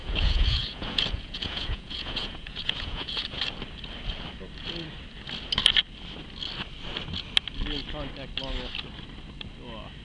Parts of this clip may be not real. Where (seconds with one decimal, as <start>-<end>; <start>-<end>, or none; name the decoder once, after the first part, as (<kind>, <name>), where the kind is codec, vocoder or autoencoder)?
0.0-3.4 (vocoder, Vocos)